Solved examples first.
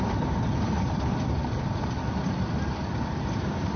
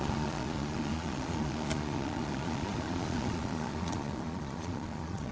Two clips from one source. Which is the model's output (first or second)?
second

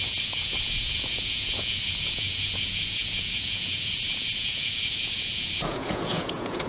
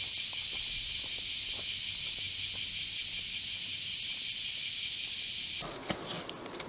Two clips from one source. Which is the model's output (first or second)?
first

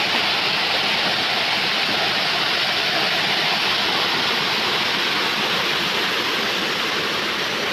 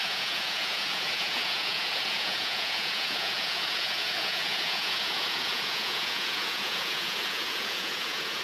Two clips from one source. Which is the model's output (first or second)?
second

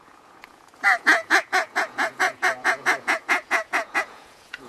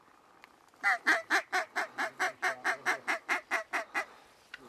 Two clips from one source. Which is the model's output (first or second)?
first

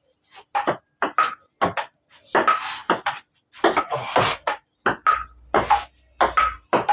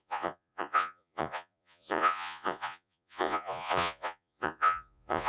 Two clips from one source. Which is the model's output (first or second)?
second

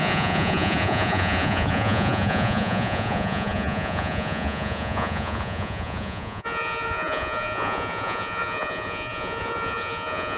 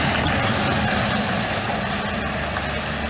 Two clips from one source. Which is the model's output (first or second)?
first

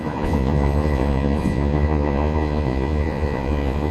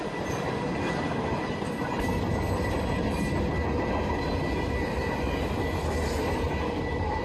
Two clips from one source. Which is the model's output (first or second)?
first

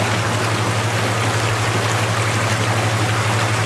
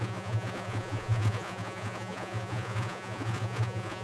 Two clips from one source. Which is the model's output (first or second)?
second